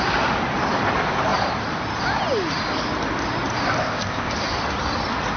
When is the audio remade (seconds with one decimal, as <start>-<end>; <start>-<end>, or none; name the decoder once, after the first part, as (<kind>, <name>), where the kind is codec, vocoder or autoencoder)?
3.8-4.3 (codec, ZipCodec)

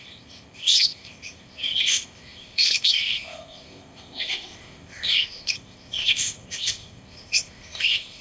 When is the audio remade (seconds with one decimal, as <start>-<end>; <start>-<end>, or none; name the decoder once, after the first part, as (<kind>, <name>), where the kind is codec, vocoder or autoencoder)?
0.0-8.2 (codec, ZipCodec)

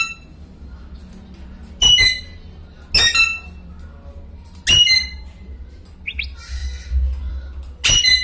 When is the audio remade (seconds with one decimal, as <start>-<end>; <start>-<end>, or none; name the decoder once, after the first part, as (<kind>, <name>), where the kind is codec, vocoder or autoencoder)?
none

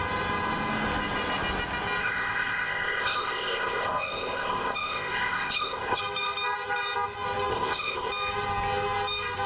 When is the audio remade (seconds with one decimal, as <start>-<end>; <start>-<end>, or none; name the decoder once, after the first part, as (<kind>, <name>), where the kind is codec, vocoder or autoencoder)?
2.0-6.0 (codec, ZipCodec); 7.5-8.1

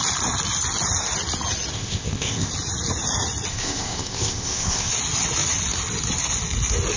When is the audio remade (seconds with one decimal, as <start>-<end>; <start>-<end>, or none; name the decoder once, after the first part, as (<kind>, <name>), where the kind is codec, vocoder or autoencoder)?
1.7-2.5 (codec, ZipCodec); 3.5-4.9

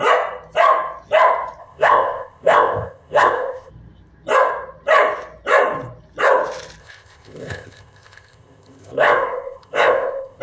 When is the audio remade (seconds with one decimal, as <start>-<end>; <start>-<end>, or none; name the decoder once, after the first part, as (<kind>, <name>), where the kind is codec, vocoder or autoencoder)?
1.6-3.7 (codec, ZipCodec); 6.8-10.4

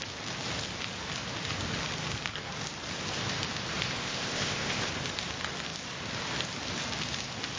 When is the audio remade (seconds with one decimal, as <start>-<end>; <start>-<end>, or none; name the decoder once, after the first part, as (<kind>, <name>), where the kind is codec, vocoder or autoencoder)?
4.0-4.9 (codec, ZipCodec)

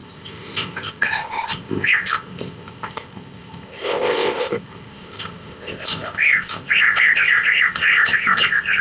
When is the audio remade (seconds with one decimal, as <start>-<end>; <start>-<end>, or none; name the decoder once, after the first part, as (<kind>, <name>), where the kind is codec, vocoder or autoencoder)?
0.0-8.8 (codec, ZipCodec)